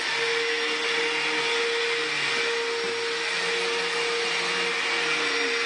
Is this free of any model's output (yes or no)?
yes